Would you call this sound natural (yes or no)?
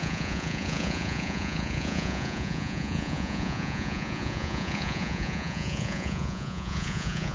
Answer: no